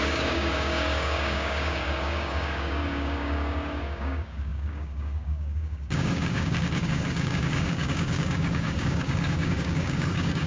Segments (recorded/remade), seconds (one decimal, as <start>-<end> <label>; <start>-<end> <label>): 0.0-10.5 remade